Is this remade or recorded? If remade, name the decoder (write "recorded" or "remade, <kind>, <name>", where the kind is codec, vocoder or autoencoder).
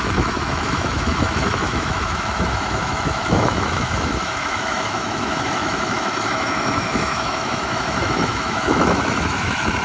remade, autoencoder, DAC-VAE